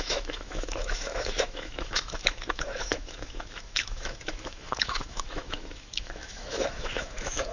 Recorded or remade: remade